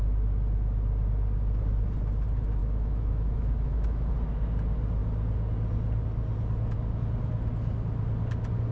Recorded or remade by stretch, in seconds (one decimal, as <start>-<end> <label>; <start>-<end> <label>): 0.0-2.6 recorded; 2.6-4.1 remade; 4.1-8.7 recorded